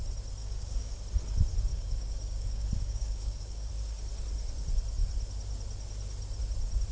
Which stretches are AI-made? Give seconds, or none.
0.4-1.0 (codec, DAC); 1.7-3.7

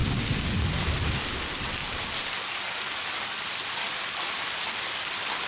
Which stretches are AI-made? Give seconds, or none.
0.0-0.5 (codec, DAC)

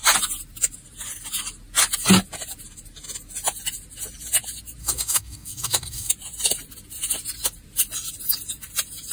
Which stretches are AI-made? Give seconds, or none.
4.8-6.1 (codec, DAC)

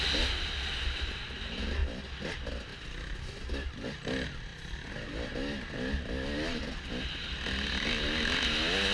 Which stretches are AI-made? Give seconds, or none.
none